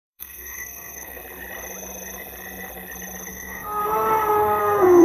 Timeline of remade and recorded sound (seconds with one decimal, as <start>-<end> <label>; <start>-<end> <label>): 0.0-1.2 remade; 1.2-3.3 recorded; 3.3-3.8 remade; 3.8-4.6 recorded; 4.6-5.0 remade